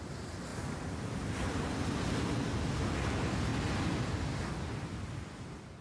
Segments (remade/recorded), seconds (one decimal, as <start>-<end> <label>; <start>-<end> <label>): 0.0-5.8 recorded